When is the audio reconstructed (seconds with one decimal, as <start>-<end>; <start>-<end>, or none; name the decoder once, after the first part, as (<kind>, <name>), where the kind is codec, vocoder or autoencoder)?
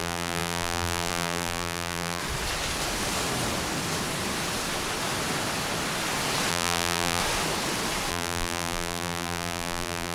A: 0.0-2.2 (vocoder, BigVGAN v2); 6.5-7.2; 8.1-10.1